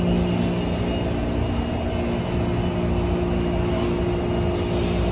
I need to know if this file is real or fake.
real